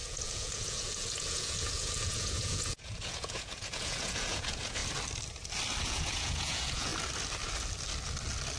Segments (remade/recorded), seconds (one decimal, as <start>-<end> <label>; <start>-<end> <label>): 0.0-4.8 remade; 4.8-5.8 recorded; 5.8-6.9 remade; 6.9-8.6 recorded